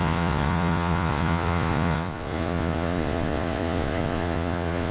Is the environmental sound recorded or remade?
remade